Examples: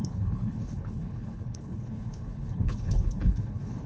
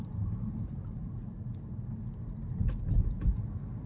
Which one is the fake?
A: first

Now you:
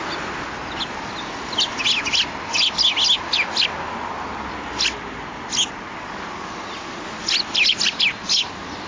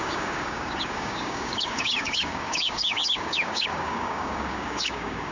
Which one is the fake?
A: second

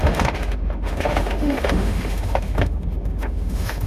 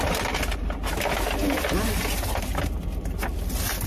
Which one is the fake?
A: first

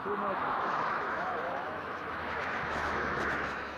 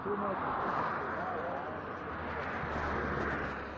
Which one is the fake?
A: first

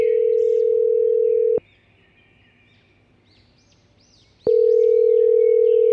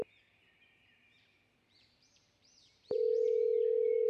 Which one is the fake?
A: second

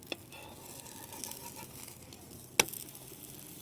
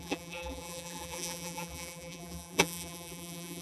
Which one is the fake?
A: second